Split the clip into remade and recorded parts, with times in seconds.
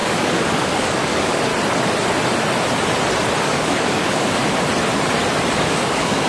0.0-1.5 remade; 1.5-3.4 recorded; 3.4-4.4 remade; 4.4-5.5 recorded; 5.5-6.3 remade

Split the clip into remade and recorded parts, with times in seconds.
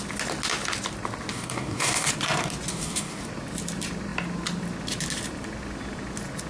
0.0-1.3 recorded; 1.3-2.1 remade; 2.1-2.7 recorded; 2.7-3.2 remade; 3.2-6.5 recorded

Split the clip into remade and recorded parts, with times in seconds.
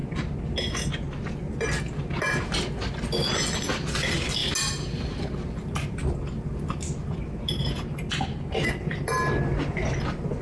0.0-10.4 recorded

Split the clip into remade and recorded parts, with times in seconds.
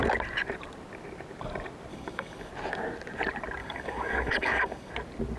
0.0-1.9 recorded; 1.9-2.5 remade; 2.5-3.6 recorded; 3.6-4.9 remade; 4.9-5.4 recorded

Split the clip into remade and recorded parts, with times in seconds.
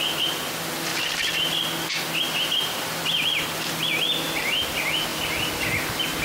0.0-6.2 recorded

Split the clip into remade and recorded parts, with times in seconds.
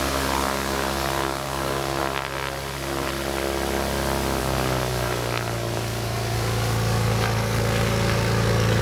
0.0-2.0 remade; 2.0-4.4 recorded; 4.4-8.8 remade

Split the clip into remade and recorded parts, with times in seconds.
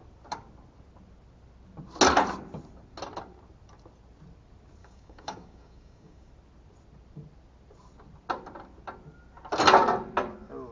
0.0-4.8 recorded; 4.8-6.3 remade; 6.3-10.7 recorded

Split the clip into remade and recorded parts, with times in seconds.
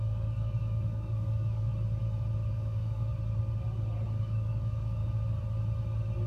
0.0-1.7 remade; 1.7-2.5 recorded; 2.5-3.1 remade; 3.1-4.2 recorded; 4.2-5.0 remade; 5.0-6.3 recorded